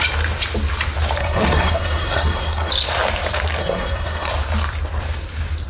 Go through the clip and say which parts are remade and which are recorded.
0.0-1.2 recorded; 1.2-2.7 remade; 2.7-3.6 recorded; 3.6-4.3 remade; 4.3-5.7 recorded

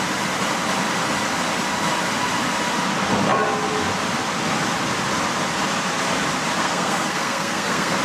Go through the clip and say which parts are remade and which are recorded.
0.0-6.6 recorded; 6.6-8.0 remade

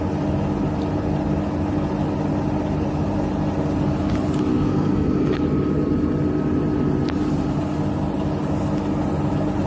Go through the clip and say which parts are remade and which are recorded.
0.0-4.5 recorded; 4.5-5.4 remade; 5.4-9.7 recorded

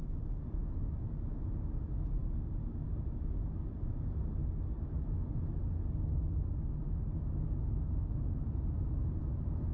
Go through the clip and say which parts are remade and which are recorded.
0.0-9.7 recorded

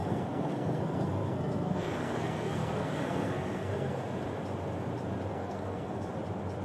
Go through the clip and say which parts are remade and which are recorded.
0.0-4.0 remade; 4.0-5.3 recorded; 5.3-6.1 remade; 6.1-6.6 recorded

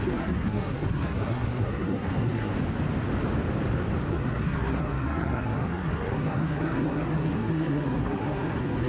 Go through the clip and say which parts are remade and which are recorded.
0.0-2.5 remade; 2.5-4.1 recorded; 4.1-8.9 remade